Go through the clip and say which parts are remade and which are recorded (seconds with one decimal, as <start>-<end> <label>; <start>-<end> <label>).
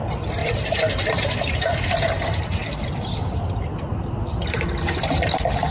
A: 0.0-2.6 remade; 2.6-5.7 recorded